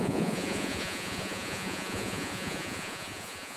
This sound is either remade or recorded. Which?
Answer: remade